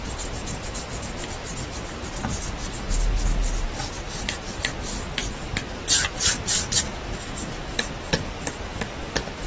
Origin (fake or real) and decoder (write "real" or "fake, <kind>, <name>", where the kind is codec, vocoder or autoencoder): real